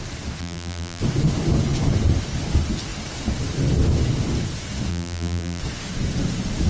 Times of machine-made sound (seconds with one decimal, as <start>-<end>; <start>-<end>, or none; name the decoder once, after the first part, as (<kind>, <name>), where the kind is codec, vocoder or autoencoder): 0.4-1.0 (vocoder, BigVGAN v2); 4.9-5.6